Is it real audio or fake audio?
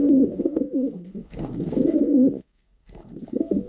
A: fake